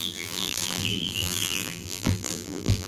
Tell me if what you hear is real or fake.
fake